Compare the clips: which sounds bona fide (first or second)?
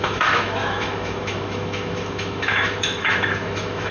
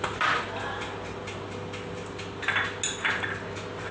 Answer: second